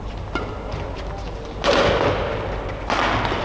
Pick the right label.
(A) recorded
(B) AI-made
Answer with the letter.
A